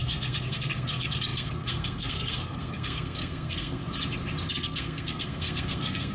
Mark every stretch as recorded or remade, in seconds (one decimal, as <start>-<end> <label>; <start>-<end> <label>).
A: 0.0-3.8 remade; 3.8-4.5 recorded; 4.5-6.1 remade